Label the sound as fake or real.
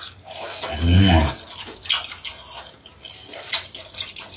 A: real